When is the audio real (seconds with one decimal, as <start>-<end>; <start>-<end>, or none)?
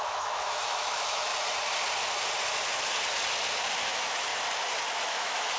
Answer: 1.3-3.8; 4.3-4.9